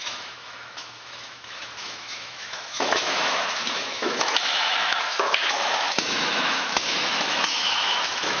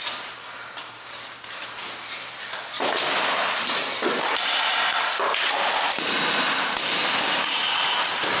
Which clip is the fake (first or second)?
first